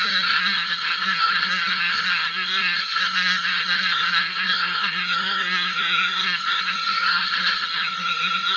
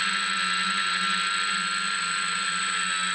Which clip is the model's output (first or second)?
first